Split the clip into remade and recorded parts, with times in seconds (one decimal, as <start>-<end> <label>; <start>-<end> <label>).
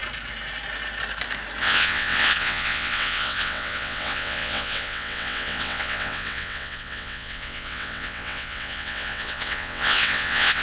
0.0-1.6 recorded; 1.6-10.6 remade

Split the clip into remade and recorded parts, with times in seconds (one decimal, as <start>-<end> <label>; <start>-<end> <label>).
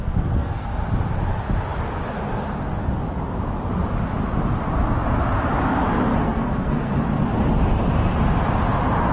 0.0-0.7 remade; 0.7-6.1 recorded; 6.1-7.0 remade; 7.0-9.1 recorded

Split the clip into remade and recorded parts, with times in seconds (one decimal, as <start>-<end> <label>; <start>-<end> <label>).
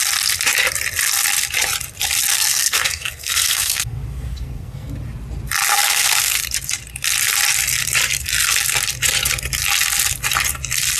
0.0-2.3 recorded; 2.3-4.9 remade; 4.9-5.7 recorded; 5.7-6.4 remade; 6.4-11.0 recorded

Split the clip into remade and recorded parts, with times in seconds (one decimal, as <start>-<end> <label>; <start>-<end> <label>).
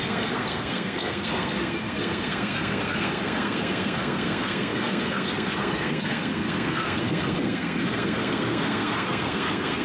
0.0-9.8 remade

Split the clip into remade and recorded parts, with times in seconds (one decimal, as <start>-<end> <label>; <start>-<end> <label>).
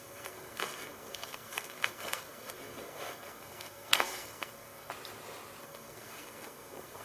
0.0-4.9 remade; 4.9-5.6 recorded; 5.6-7.0 remade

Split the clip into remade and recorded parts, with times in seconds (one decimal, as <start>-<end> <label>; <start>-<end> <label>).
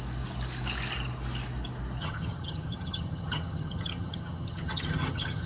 0.0-2.0 recorded; 2.0-5.5 remade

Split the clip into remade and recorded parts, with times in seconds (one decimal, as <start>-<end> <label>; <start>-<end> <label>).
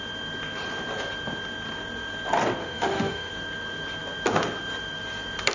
0.0-2.6 recorded; 2.6-3.3 remade; 3.3-5.5 recorded